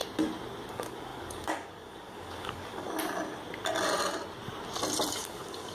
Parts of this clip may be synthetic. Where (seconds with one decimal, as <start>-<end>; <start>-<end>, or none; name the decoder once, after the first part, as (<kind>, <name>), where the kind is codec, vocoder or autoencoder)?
0.7-3.0 (codec, DAC); 5.1-5.7